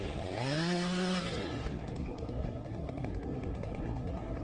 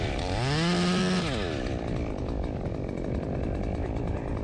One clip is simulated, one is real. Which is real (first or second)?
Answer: second